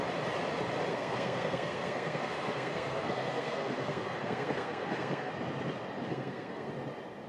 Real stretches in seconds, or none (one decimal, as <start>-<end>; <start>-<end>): 0.0-0.9; 5.3-6.1; 6.7-7.3